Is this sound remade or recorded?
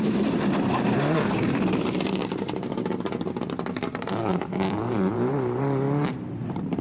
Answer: remade